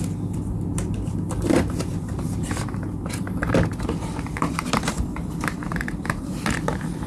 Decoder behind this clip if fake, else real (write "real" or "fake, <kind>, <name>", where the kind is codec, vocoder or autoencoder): fake, vocoder, BigVGAN v2